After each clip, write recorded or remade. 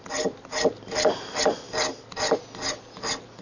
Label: recorded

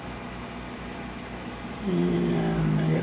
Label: recorded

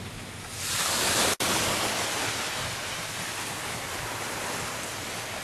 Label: recorded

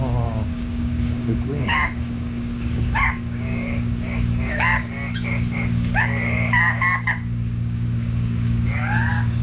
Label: remade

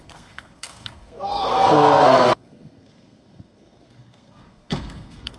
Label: remade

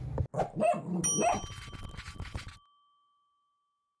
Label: recorded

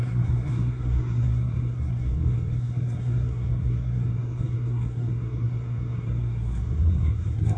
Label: remade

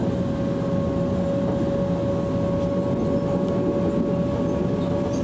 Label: recorded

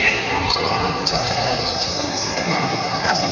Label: remade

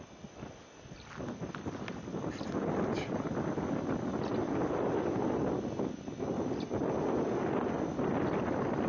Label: recorded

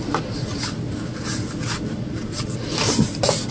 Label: recorded